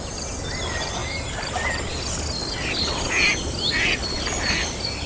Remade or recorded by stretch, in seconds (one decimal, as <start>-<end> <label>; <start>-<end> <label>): 0.0-5.1 recorded